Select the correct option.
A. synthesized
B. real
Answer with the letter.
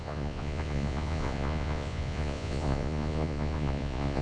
A